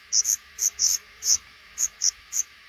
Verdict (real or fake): fake